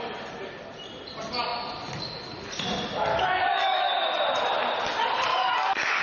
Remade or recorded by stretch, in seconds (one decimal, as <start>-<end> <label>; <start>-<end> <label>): 0.0-3.1 recorded; 3.1-3.9 remade; 3.9-5.3 recorded; 5.3-6.0 remade

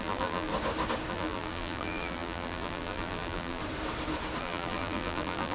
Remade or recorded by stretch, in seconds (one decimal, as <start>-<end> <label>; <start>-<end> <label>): 0.0-0.5 remade; 0.5-1.1 recorded; 1.1-3.6 remade; 3.6-4.4 recorded; 4.4-5.5 remade

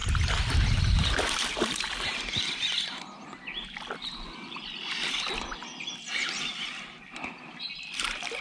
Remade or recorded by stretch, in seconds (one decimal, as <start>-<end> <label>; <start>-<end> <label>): 0.0-8.4 recorded

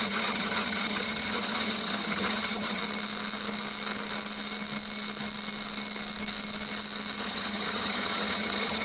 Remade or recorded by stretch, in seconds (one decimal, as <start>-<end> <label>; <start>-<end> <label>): 0.0-2.8 remade; 2.8-7.2 recorded; 7.2-8.8 remade

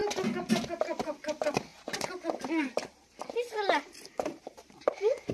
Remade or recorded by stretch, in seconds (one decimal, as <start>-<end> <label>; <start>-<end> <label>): 0.0-0.5 recorded; 0.5-5.3 remade

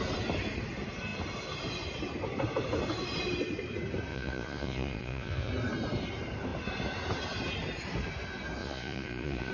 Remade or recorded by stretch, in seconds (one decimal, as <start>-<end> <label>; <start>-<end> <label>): 0.0-4.1 recorded; 4.1-5.5 remade; 5.5-8.6 recorded; 8.6-9.5 remade